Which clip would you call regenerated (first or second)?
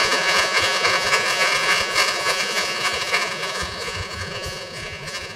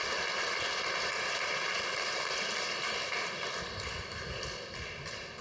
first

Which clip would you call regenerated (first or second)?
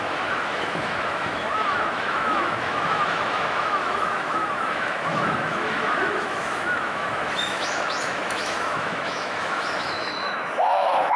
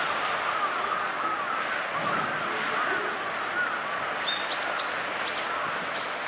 first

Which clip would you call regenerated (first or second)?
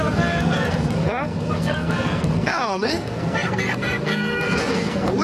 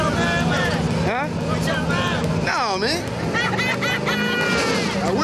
first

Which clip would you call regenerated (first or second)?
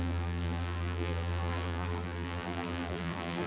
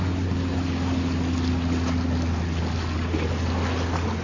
first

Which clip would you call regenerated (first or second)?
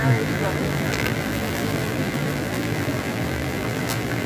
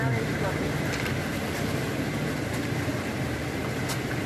first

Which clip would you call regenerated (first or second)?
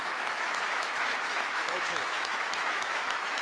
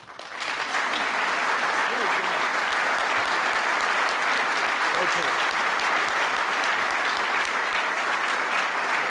first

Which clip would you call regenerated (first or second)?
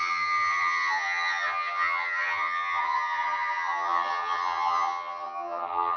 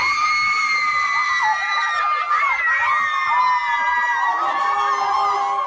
first